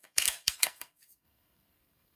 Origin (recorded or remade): remade